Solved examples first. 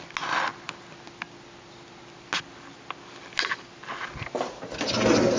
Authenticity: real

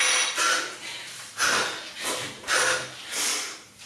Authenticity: real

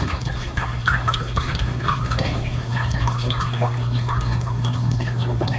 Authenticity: fake